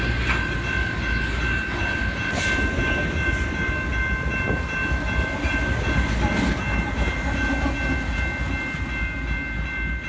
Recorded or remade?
recorded